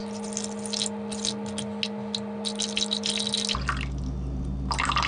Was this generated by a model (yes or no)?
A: no